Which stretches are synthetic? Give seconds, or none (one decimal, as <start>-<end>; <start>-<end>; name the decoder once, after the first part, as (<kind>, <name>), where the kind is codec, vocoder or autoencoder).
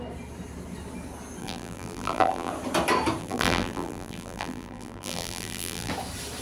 1.4-2.5 (vocoder, BigVGAN v2); 3.2-5.9